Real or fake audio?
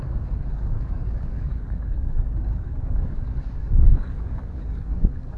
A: fake